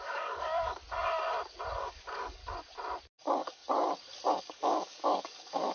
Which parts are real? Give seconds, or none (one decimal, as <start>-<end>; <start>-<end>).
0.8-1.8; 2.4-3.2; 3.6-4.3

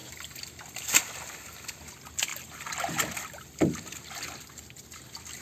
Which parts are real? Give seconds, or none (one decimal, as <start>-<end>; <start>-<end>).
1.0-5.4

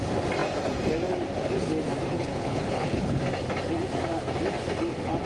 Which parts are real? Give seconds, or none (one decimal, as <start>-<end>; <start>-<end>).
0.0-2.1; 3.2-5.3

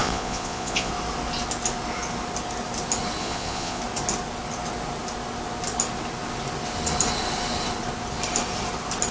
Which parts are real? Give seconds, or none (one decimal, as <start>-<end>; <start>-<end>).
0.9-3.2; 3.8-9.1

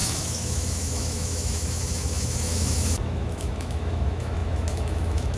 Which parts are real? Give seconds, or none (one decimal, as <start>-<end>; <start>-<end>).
none

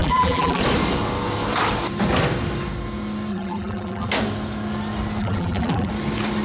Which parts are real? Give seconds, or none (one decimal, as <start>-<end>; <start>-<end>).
0.6-3.3; 4.1-5.2; 5.9-6.4

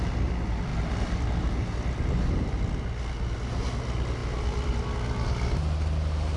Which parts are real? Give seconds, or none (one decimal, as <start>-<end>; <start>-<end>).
0.0-6.4

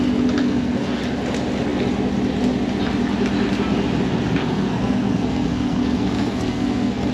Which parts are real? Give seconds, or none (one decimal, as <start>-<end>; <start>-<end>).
0.0-0.4; 1.0-4.4